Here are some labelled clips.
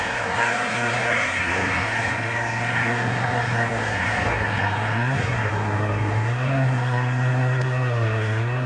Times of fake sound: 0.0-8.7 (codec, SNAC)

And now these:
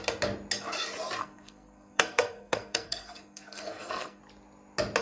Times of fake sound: 1.2-4.2 (codec, SNAC)

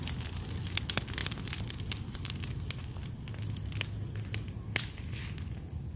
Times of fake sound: none